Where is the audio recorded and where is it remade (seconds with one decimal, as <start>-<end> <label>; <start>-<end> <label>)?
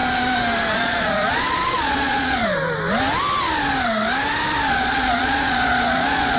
0.0-0.7 recorded; 0.7-2.4 remade; 2.4-4.7 recorded; 4.7-6.4 remade